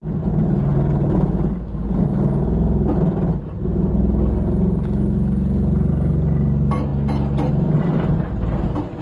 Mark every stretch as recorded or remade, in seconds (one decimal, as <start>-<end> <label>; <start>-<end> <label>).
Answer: 0.0-9.0 recorded